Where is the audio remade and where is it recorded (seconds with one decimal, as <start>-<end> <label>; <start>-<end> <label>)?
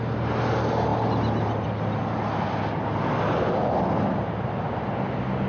0.0-5.5 recorded